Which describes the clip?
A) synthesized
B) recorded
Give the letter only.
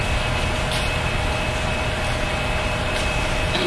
B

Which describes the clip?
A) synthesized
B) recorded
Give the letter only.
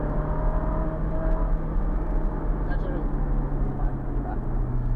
B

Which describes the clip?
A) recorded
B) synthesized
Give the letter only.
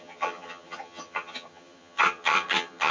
B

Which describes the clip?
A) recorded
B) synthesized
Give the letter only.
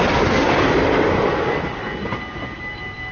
A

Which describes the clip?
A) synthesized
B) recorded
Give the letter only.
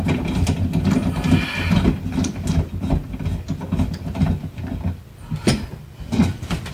B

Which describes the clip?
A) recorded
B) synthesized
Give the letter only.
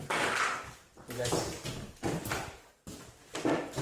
A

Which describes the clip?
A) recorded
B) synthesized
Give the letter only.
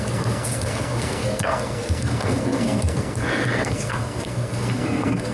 B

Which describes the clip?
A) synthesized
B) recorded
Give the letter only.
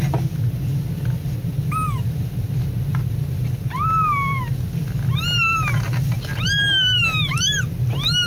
B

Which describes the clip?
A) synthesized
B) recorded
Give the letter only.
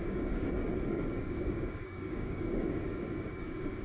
A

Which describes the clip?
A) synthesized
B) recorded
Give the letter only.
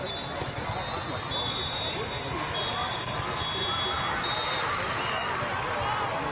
B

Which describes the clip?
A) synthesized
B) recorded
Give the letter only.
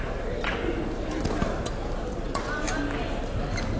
B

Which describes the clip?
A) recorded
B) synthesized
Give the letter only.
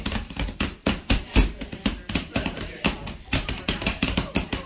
B